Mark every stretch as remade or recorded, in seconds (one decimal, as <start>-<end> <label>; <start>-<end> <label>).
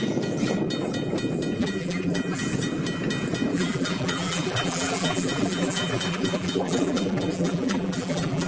0.0-1.6 recorded; 1.6-2.4 remade; 2.4-3.5 recorded; 3.5-8.5 remade